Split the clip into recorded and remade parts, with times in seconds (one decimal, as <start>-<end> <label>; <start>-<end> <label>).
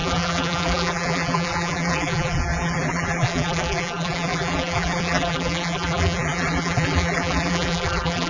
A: 0.0-8.3 remade